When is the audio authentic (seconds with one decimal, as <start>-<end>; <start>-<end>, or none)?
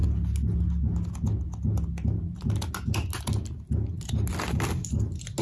0.0-5.4